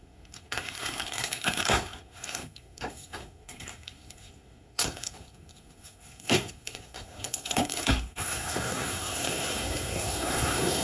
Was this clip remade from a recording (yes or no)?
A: yes